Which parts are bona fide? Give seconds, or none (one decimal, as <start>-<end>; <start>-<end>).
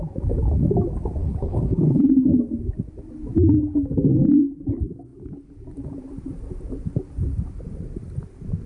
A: 0.0-1.2; 2.1-8.7